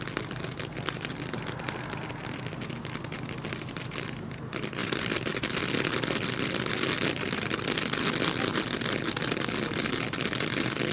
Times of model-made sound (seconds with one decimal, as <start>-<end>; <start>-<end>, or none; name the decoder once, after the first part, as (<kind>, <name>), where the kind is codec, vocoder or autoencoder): none